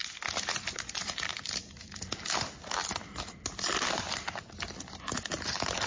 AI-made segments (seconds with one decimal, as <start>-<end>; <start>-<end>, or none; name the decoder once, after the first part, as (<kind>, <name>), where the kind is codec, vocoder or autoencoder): none